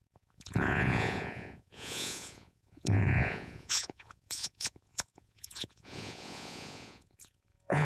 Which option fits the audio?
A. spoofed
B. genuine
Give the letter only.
A